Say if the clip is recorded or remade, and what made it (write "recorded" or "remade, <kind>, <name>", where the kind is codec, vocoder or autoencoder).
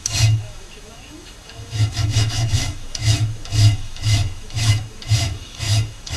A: remade, autoencoder, DAC-VAE